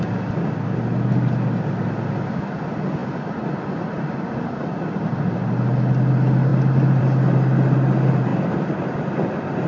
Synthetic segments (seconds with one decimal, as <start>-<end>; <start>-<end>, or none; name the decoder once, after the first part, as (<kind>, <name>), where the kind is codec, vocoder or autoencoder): none